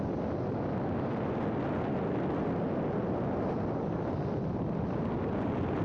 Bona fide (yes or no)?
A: yes